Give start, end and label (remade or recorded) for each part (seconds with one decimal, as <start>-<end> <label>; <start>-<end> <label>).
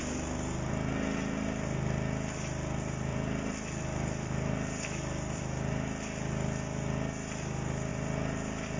0.0-3.1 recorded; 3.1-5.4 remade; 5.4-7.9 recorded; 7.9-8.8 remade